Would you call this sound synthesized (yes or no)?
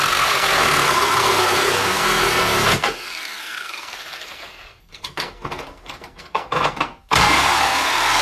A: yes